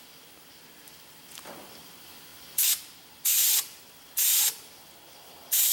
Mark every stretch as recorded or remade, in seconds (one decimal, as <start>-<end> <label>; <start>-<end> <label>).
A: 0.0-5.7 recorded